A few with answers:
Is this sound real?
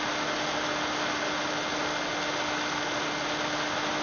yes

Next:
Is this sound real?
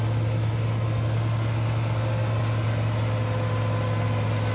yes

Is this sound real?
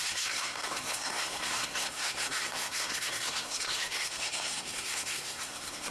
no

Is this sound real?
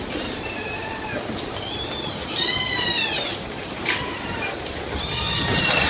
yes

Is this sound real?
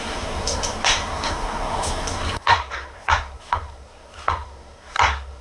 no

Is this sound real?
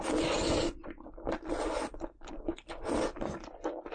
yes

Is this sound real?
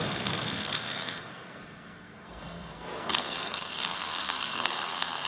no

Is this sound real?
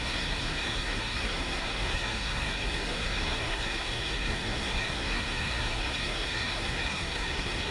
no